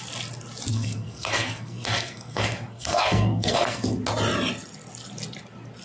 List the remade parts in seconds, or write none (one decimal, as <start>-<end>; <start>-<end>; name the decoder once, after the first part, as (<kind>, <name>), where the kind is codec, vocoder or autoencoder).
0.7-4.0 (codec, SNAC)

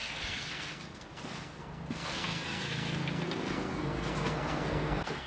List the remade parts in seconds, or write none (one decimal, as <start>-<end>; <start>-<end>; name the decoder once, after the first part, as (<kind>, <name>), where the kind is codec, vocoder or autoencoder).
0.0-5.3 (codec, SNAC)

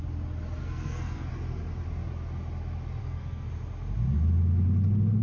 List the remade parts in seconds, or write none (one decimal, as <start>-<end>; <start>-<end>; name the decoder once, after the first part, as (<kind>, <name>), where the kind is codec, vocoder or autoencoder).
0.6-1.3 (codec, SNAC); 3.0-3.5

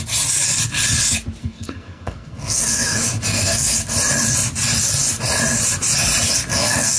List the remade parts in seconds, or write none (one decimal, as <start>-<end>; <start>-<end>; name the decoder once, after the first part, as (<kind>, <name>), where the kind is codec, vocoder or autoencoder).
1.4-3.8 (codec, SNAC); 6.5-7.0

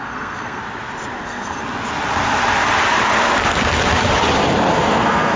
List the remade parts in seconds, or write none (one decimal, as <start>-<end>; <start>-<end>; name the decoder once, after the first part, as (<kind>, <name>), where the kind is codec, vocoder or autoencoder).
0.0-0.6 (codec, SNAC); 1.2-1.6; 4.8-5.4

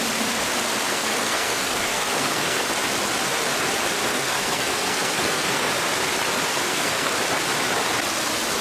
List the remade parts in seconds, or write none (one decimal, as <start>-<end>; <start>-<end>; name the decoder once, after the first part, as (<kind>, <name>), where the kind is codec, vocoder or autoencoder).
0.9-2.7 (codec, SNAC); 4.1-5.7; 6.5-7.2

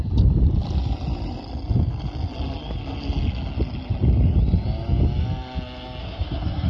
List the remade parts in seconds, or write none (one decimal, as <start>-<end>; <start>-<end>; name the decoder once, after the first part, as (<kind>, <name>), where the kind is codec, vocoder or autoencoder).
6.0-6.7 (codec, SNAC)

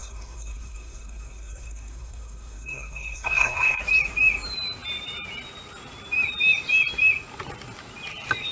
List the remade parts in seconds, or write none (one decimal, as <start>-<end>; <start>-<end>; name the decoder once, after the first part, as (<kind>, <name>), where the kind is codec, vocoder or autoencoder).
0.0-3.8 (codec, SNAC)